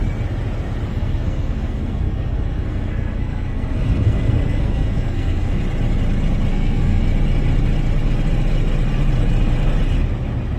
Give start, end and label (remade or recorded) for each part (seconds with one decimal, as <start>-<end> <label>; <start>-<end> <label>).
0.0-0.9 recorded; 0.9-5.6 remade; 5.6-6.5 recorded; 6.5-7.0 remade; 7.0-10.6 recorded